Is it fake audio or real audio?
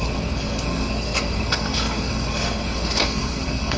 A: fake